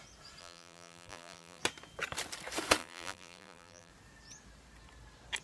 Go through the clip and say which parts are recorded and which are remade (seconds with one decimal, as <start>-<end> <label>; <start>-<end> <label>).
0.0-0.4 recorded; 0.4-1.6 remade; 1.6-2.8 recorded; 2.8-3.9 remade; 3.9-5.4 recorded